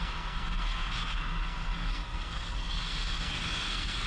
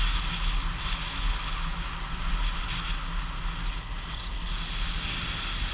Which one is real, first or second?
second